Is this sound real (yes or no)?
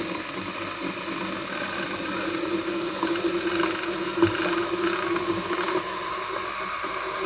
yes